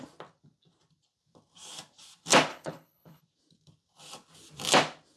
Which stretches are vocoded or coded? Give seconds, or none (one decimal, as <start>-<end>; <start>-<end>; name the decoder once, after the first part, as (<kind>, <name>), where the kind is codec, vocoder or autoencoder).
2.5-3.2 (codec, HILCodec)